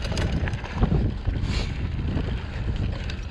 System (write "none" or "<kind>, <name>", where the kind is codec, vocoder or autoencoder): none